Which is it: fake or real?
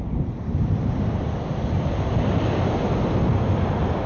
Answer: real